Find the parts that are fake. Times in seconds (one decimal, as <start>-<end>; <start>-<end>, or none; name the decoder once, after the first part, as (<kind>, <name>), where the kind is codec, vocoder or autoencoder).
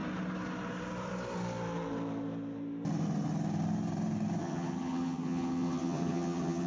4.4-6.7 (vocoder, HiFi-GAN)